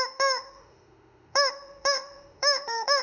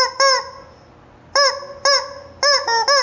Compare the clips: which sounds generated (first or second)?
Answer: first